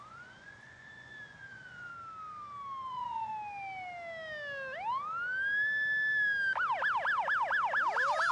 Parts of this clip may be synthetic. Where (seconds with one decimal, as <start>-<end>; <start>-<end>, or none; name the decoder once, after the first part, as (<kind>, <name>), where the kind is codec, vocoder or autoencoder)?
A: 0.0-1.9 (vocoder, Vocos); 2.9-3.3

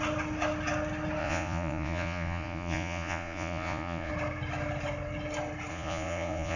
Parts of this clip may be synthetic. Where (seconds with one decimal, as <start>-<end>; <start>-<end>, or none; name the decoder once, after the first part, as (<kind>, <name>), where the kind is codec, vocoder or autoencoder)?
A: 1.2-4.1 (vocoder, Vocos); 5.7-6.6